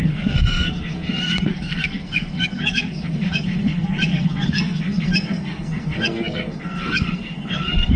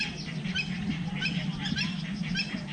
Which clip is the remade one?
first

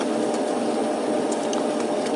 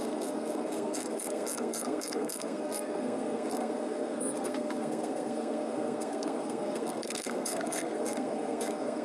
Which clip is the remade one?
second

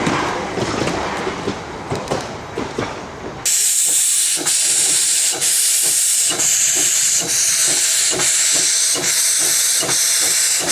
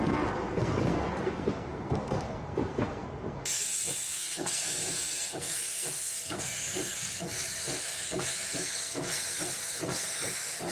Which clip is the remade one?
second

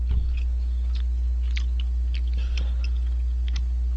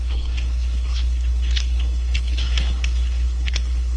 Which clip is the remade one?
second